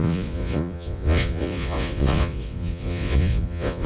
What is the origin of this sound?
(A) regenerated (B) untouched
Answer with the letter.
A